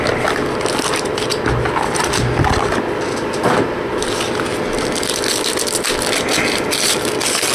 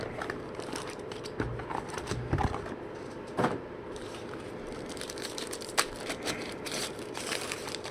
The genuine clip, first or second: first